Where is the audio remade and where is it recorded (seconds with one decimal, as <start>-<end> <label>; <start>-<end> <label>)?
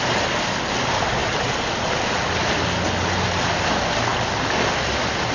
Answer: 0.0-5.3 recorded